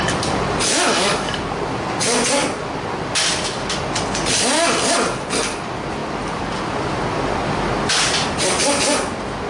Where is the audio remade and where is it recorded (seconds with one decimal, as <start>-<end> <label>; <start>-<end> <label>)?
0.0-9.5 recorded